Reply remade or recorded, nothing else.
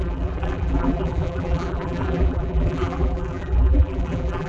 remade